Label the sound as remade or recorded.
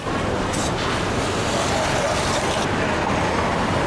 recorded